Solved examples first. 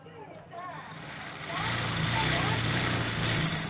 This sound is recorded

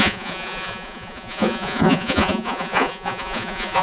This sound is remade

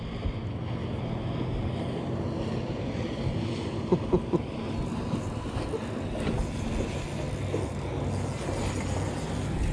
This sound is recorded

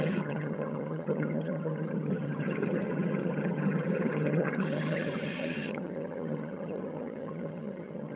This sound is remade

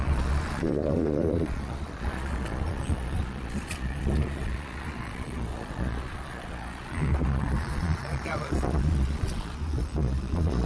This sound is remade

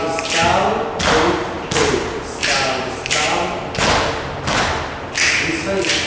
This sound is recorded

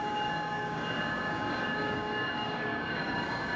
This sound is remade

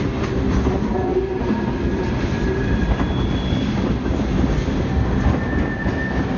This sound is recorded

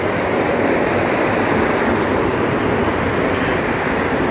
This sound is recorded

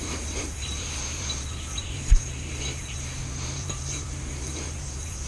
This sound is remade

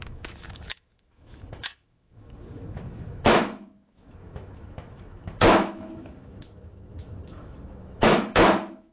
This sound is remade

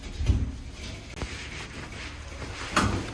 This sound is recorded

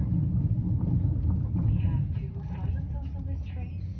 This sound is recorded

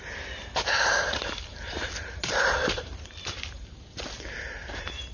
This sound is remade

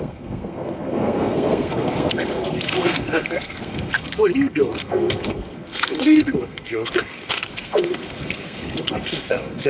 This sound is remade